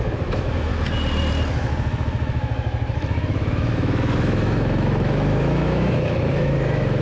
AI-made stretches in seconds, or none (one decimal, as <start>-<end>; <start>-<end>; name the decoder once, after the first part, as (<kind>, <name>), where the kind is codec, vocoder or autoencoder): 0.0-0.7 (autoencoder, DAC-VAE); 1.5-7.0